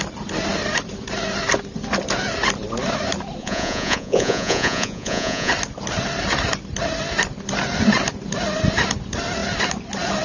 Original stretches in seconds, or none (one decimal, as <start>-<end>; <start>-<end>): 0.0-3.4; 5.5-10.2